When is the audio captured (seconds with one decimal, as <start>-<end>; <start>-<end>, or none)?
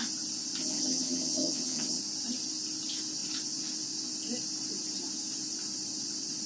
0.0-0.6; 2.0-6.5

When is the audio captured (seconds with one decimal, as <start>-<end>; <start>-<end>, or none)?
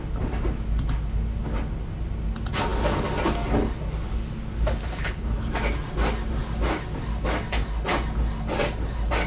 0.0-4.9; 5.5-9.3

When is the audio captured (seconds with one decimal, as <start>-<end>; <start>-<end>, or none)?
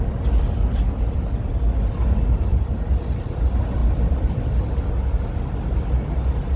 0.0-6.6